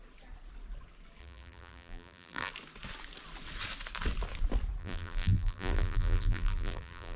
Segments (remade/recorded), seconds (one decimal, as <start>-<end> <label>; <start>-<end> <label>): 0.0-1.2 recorded; 1.2-2.5 remade; 2.5-4.8 recorded; 4.8-7.2 remade